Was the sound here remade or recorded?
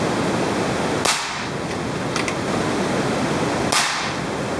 recorded